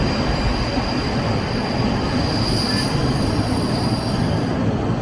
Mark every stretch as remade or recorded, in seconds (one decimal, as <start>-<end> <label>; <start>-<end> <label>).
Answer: 0.0-1.0 recorded; 1.0-2.1 remade; 2.1-5.0 recorded